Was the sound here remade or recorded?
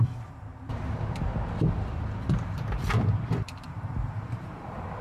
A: remade